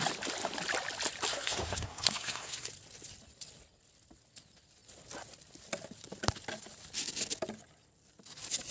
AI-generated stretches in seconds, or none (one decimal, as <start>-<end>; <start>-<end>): 1.3-2.7